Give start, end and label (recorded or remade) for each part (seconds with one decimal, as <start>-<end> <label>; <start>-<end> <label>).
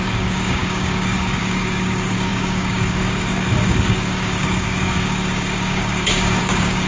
0.0-6.9 remade